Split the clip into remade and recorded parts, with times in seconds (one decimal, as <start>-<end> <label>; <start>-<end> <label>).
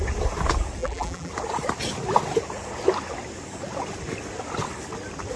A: 0.0-0.8 recorded; 0.8-1.3 remade; 1.3-5.4 recorded